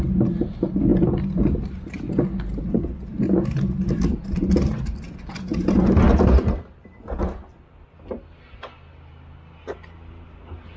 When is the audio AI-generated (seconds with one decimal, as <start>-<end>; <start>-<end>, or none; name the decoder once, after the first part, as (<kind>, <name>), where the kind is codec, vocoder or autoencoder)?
none